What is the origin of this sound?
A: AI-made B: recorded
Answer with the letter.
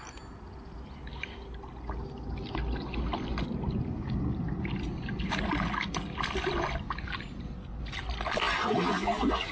B